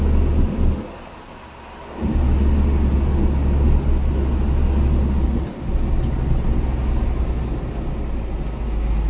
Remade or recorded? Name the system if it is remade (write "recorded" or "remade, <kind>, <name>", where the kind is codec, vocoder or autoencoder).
recorded